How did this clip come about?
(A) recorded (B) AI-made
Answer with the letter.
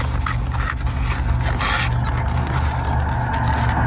A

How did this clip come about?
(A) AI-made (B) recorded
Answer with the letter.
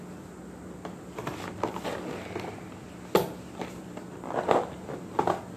B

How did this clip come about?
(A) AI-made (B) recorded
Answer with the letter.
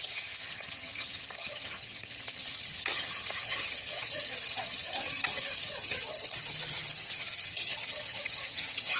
A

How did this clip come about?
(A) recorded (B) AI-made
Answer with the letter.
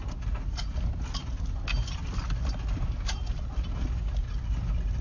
A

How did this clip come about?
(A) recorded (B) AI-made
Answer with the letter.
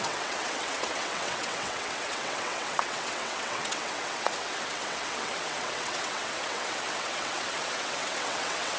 B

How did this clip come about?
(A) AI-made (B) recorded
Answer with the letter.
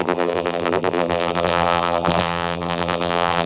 A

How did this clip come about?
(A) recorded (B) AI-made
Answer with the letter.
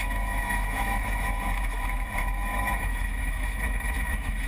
B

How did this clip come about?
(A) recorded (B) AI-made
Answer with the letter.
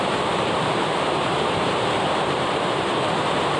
B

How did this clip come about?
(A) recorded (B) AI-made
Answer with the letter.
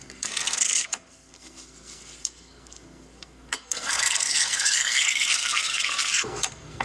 B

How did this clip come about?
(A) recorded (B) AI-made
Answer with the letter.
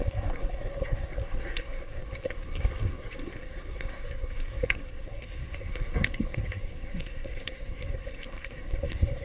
B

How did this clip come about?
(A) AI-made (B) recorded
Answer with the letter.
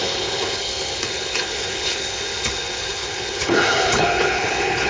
A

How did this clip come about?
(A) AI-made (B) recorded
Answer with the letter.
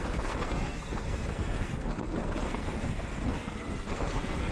A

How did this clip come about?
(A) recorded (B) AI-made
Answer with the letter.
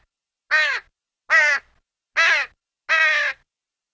A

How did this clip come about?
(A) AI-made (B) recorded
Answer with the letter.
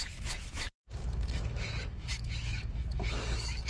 A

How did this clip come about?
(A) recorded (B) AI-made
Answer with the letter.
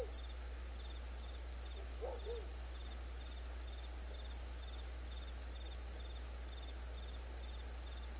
A